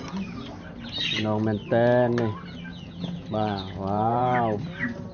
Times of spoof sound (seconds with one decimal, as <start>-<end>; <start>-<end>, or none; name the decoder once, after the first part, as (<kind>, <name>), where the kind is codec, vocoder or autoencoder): 2.7-4.4 (vocoder, Vocos)